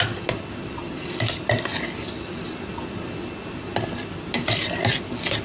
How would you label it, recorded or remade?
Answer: recorded